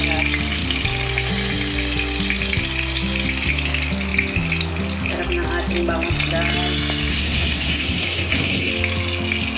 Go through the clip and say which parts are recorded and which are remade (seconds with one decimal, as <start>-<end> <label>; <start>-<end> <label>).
0.0-7.1 recorded; 7.1-8.7 remade; 8.7-9.6 recorded